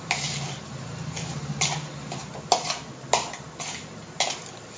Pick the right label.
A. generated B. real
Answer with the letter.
B